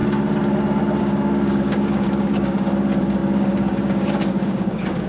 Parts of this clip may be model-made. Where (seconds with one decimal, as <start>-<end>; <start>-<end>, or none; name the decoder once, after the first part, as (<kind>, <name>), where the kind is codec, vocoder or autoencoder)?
1.0-5.1 (codec, DAC)